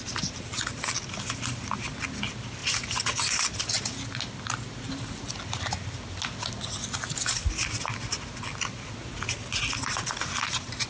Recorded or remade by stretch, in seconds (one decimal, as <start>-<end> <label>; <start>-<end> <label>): 0.0-10.9 recorded